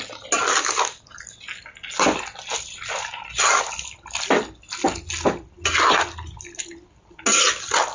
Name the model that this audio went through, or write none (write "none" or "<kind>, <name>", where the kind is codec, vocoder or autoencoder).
none